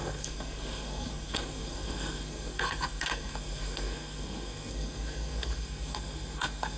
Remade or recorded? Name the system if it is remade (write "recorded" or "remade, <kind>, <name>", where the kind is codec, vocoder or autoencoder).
remade, codec, SNAC